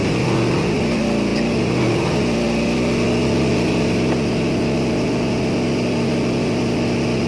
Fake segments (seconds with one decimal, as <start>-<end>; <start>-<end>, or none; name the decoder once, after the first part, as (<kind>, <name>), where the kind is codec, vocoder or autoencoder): none